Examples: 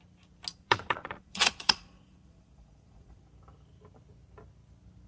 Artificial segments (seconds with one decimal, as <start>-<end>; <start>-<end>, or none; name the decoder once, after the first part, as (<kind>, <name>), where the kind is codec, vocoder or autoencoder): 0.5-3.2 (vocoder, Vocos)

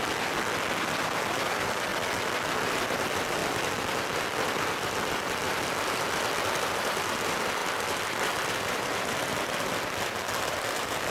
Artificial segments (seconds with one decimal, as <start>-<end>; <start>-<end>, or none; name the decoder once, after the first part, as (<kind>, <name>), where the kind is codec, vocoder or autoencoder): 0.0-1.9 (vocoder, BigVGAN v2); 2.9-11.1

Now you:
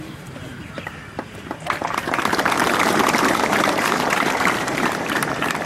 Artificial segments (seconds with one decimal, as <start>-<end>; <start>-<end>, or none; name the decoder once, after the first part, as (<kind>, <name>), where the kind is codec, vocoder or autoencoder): 0.0-1.0 (vocoder, BigVGAN v2); 2.8-5.7

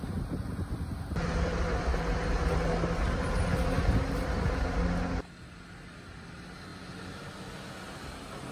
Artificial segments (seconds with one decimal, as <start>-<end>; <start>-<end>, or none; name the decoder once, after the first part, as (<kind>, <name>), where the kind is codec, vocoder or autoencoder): none

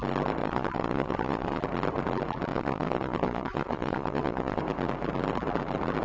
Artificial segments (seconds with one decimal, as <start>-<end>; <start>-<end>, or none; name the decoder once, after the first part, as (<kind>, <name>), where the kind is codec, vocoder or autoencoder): 0.4-1.6 (vocoder, Vocos); 2.5-4.6

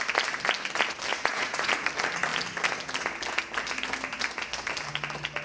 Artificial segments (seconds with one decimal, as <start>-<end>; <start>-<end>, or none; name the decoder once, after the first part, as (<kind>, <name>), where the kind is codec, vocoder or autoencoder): 1.1-1.7 (vocoder, Vocos)